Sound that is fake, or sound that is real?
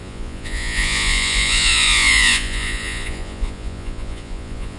fake